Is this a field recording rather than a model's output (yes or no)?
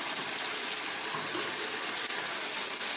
yes